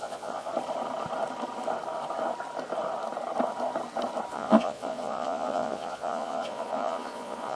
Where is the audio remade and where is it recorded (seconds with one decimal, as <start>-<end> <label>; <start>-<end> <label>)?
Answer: 0.0-0.5 remade; 0.5-4.3 recorded; 4.3-7.6 remade